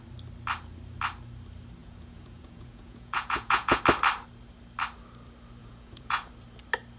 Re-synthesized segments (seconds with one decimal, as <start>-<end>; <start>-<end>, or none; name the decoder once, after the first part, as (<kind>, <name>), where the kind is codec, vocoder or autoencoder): 1.8-3.8 (vocoder, Vocos); 5.6-6.3